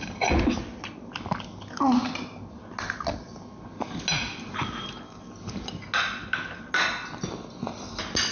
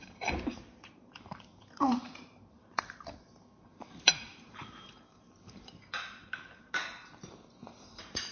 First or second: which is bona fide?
first